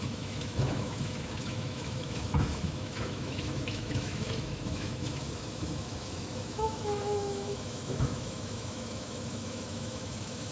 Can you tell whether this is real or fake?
fake